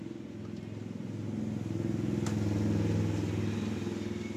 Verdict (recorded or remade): recorded